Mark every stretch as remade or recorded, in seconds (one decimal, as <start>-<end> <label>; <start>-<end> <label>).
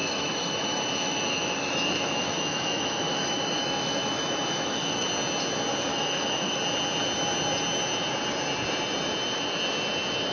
0.0-5.1 remade; 5.1-5.9 recorded; 5.9-6.6 remade; 6.6-10.3 recorded